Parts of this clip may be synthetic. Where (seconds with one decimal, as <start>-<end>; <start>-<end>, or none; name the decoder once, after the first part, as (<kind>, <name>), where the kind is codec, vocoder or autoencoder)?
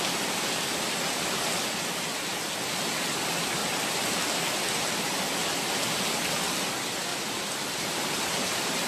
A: 7.1-8.9 (vocoder, BigVGAN v2)